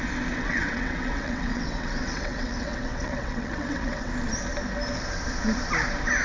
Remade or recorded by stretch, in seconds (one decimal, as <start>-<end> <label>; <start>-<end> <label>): 0.0-0.4 recorded; 0.4-4.1 remade; 4.1-6.2 recorded